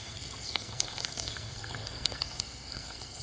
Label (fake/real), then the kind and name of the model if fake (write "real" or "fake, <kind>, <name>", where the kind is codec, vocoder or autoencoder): fake, codec, SNAC